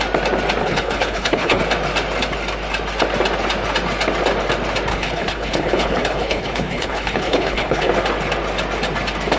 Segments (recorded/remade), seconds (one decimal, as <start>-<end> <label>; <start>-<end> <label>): 0.0-0.6 recorded; 0.6-1.6 remade; 1.6-4.9 recorded; 4.9-7.9 remade; 7.9-9.4 recorded